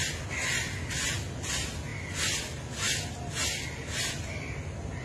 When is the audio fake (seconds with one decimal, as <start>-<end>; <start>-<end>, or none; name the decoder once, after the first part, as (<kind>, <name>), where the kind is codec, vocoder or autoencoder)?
none